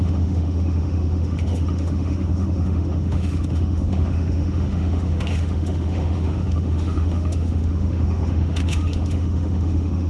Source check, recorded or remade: remade